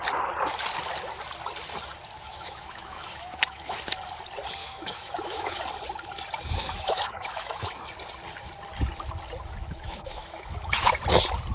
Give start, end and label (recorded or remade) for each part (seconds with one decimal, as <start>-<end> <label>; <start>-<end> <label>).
0.0-2.3 recorded; 2.3-3.8 remade; 3.8-4.6 recorded; 4.6-5.6 remade; 5.6-6.6 recorded; 6.6-7.7 remade; 7.7-9.6 recorded; 9.6-10.9 remade; 10.9-11.5 recorded